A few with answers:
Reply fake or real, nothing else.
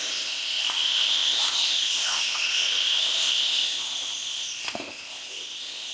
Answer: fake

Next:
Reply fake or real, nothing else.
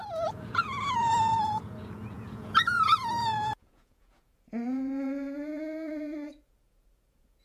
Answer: fake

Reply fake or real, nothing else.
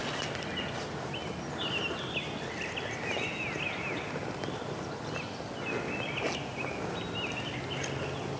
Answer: real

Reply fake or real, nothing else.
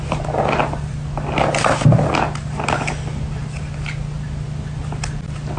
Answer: real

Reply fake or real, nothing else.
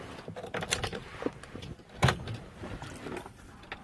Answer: real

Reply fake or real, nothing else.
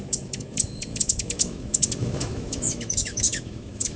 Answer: fake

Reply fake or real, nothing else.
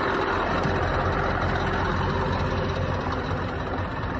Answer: real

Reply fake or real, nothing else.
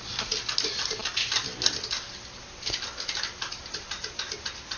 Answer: real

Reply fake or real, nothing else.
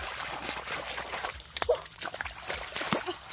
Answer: real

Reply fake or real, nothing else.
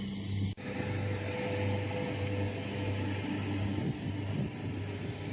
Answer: real